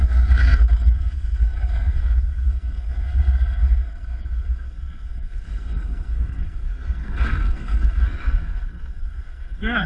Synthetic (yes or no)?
yes